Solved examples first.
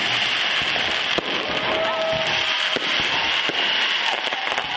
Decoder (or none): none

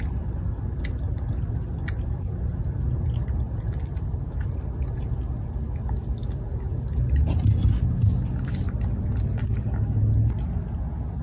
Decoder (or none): none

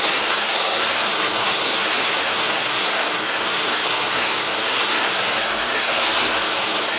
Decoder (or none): codec, SNAC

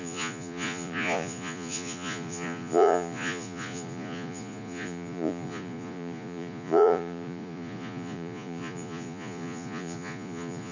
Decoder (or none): vocoder, Vocos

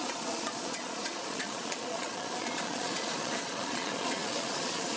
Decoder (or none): vocoder, Vocos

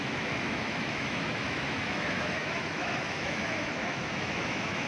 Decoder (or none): autoencoder, DAC-VAE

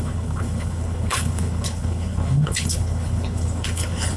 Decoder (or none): codec, HILCodec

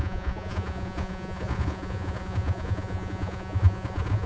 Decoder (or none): vocoder, Vocos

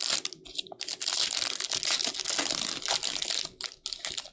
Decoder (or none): none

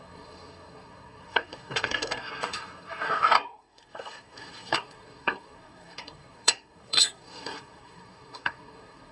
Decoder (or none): codec, SNAC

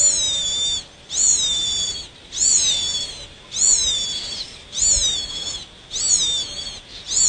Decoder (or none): none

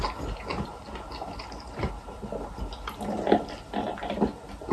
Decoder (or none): none